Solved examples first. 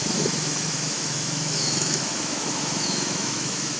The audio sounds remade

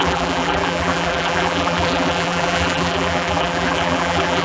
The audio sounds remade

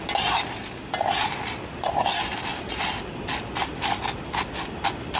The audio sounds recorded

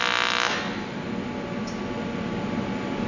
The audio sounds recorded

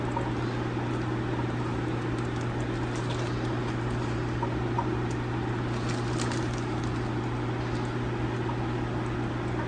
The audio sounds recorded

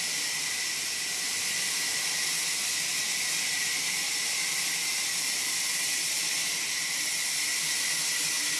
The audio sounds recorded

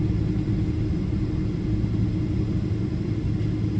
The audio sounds recorded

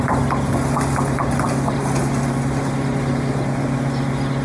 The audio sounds recorded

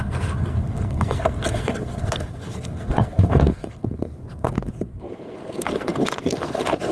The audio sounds remade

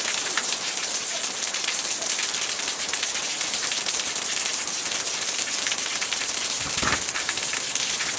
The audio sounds remade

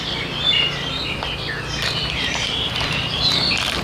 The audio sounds remade